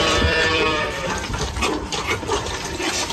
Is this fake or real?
fake